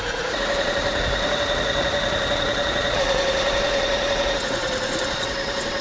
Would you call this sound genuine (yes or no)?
no